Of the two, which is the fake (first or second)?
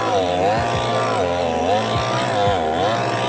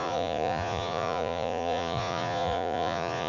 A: second